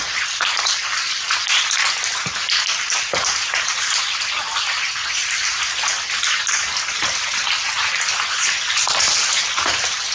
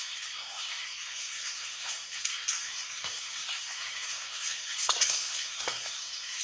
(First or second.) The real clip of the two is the first